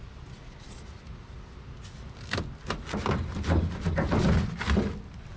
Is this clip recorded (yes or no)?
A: yes